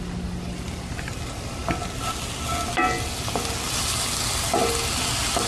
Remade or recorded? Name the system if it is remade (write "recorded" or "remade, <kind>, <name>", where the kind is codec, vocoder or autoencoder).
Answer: recorded